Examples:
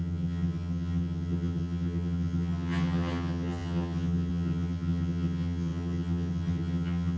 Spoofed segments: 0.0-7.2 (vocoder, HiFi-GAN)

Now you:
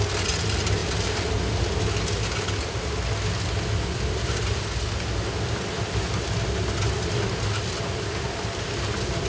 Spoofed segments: none